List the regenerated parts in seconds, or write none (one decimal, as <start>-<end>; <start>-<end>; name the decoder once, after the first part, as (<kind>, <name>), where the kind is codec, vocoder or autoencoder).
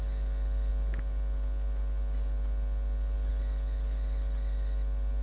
none